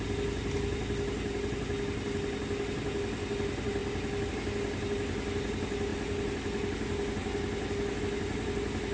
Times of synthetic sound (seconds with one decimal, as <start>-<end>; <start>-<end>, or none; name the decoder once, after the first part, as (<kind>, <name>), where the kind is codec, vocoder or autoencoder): none